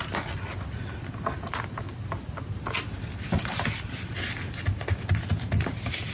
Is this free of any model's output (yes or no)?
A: yes